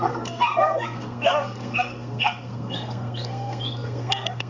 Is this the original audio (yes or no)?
no